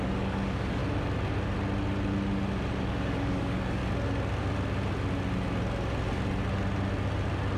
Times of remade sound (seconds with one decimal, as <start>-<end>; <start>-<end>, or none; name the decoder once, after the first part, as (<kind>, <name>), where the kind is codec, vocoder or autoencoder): 0.0-0.8 (codec, DAC); 2.9-3.8